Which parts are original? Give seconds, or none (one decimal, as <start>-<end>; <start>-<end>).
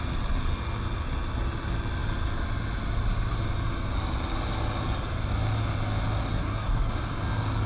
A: 0.0-6.3; 6.9-7.7